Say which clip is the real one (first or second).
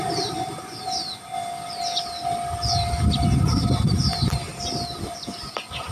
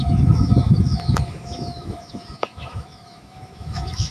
first